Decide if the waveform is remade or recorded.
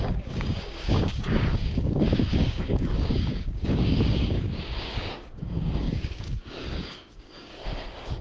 remade